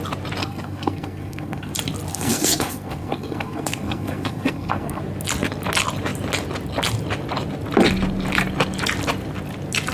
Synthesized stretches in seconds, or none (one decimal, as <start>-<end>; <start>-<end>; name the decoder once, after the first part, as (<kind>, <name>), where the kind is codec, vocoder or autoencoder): 0.4-1.7 (codec, SNAC); 2.1-5.0